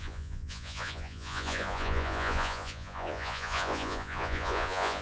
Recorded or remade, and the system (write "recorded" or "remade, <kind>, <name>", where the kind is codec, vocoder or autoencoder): remade, vocoder, Vocos